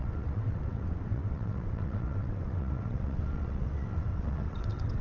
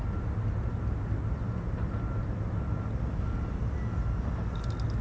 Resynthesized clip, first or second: first